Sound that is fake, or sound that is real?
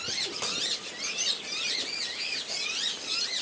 real